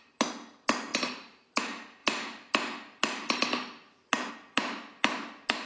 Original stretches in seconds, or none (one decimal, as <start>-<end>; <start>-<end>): 0.0-5.7